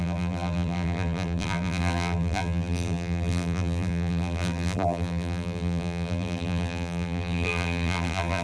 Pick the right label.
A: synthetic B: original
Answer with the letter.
A